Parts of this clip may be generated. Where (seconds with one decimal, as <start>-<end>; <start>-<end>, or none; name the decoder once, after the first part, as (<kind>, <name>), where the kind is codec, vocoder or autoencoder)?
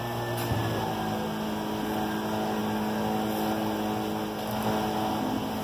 none